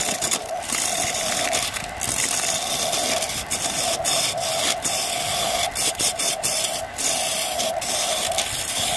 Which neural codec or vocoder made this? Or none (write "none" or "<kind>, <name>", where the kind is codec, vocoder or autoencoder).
vocoder, BigVGAN v2